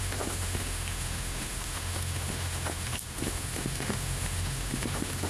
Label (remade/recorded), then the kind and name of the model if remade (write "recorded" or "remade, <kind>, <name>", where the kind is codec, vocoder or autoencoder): remade, autoencoder, DAC-VAE